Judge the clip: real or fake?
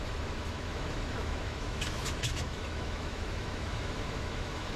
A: fake